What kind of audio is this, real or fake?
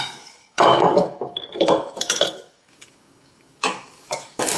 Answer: fake